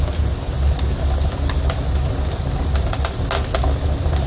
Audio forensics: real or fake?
real